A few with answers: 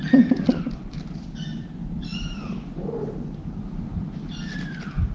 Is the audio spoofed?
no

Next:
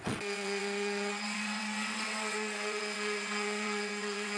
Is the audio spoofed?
yes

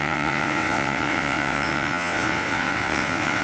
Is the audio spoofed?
yes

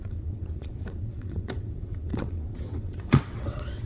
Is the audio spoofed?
yes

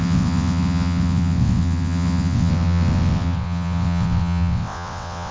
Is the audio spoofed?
yes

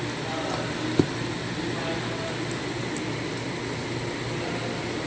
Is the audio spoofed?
no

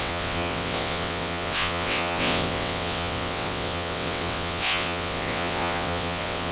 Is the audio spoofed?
yes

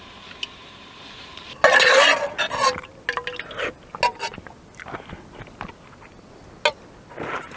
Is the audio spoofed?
no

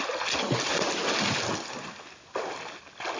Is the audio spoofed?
no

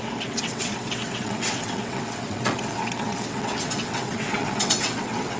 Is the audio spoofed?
yes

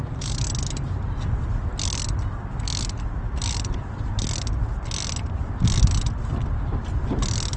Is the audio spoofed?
no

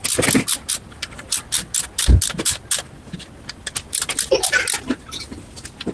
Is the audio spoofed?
no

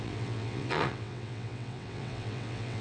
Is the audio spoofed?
yes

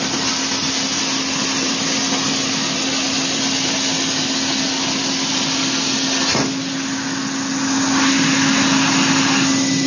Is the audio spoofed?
no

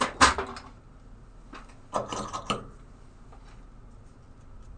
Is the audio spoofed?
no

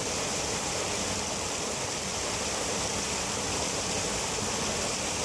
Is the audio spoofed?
no